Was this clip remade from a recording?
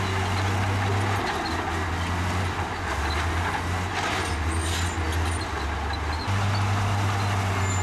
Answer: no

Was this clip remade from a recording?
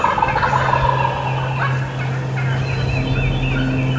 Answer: no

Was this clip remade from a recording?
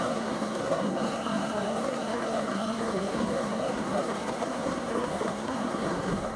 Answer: yes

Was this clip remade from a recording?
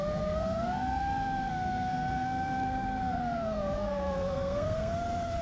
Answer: yes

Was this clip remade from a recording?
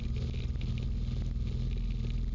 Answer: no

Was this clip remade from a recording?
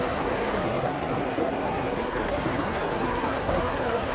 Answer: yes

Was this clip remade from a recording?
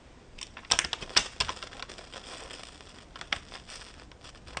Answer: no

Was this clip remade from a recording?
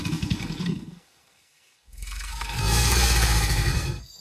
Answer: yes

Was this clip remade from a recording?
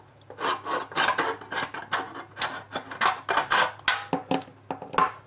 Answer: no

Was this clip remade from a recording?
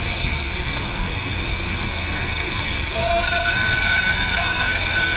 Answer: yes